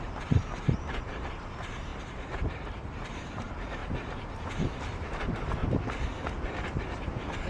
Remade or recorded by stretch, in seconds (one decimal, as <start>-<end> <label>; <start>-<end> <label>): 0.0-5.6 remade; 5.6-6.9 recorded; 6.9-7.5 remade